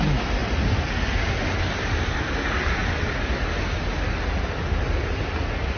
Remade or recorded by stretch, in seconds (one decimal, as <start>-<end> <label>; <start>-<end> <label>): 0.0-5.8 recorded